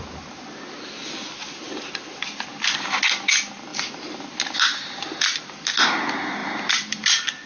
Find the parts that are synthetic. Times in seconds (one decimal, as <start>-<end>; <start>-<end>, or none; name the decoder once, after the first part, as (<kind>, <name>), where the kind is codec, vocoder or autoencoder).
none